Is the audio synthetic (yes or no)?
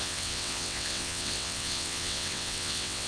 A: yes